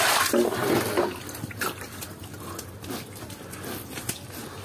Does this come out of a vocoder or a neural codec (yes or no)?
no